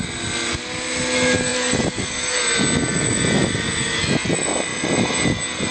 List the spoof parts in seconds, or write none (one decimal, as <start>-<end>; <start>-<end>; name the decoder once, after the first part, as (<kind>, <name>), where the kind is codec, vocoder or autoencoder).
none